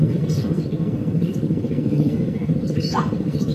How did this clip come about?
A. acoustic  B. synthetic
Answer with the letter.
B